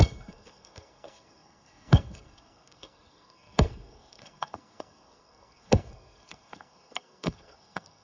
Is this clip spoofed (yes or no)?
yes